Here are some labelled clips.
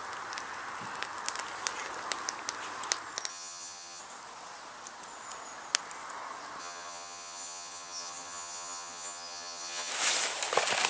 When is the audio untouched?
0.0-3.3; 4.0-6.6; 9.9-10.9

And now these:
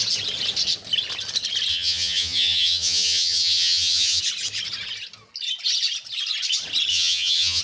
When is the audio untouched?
0.0-1.7; 4.2-6.9

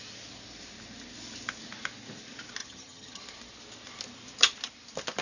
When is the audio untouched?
0.0-2.6; 3.2-5.2

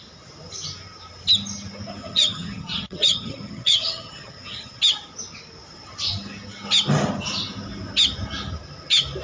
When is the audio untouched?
0.0-2.0; 4.8-9.2